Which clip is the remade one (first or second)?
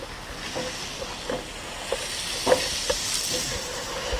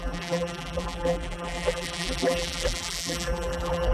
second